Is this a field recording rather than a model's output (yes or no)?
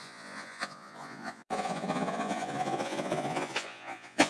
no